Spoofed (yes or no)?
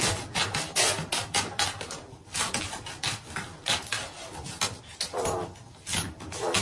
no